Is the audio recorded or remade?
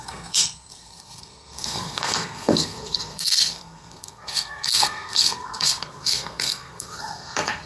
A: remade